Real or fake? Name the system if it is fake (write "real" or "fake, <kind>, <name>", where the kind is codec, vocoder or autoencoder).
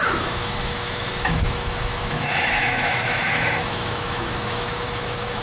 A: fake, autoencoder, DAC-VAE